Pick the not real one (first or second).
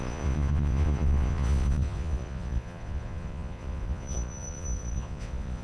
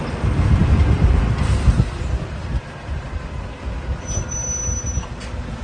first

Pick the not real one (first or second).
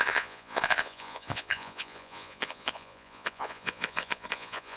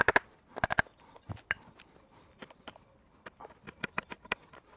first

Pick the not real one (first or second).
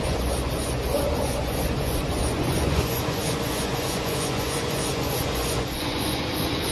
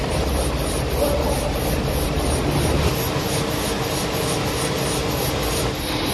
first